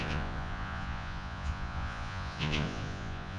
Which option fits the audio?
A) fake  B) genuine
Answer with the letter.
A